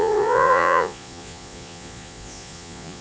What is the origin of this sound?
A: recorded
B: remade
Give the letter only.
B